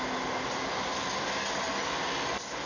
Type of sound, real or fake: real